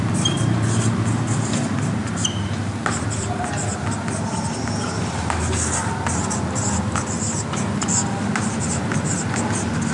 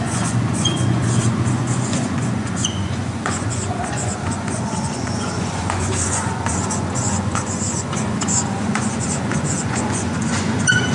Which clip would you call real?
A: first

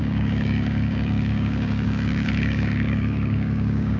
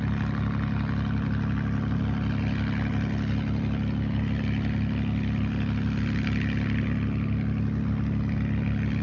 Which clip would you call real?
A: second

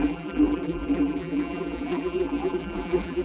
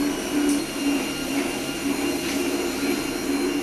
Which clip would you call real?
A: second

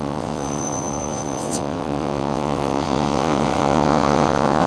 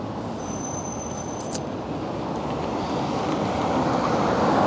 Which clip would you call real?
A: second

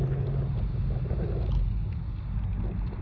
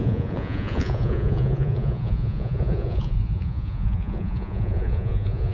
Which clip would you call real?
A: first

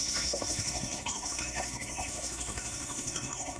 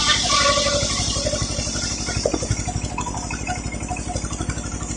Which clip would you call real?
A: second